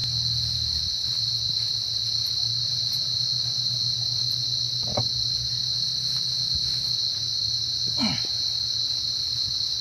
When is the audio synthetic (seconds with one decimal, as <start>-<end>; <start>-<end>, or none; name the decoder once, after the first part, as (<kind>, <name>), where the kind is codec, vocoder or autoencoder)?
none